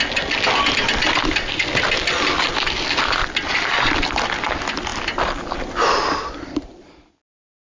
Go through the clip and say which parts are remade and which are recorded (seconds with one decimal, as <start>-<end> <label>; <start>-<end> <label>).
0.0-3.2 recorded; 3.2-4.1 remade; 4.1-7.7 recorded